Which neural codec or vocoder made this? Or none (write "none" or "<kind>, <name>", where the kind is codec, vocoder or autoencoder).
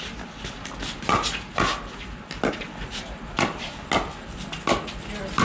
none